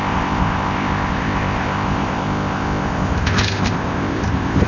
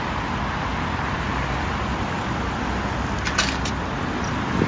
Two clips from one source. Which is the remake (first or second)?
first